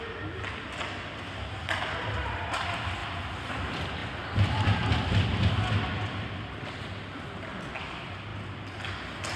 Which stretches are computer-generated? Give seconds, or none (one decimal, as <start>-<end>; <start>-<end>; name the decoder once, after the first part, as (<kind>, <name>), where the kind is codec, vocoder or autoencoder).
4.0-5.5 (vocoder, BigVGAN v2)